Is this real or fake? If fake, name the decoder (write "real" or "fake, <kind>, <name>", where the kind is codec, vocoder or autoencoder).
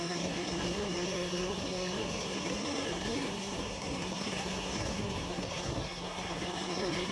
fake, codec, SNAC